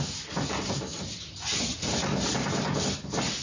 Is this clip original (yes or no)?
yes